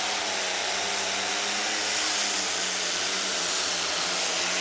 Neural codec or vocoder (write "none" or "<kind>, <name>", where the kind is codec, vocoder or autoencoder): none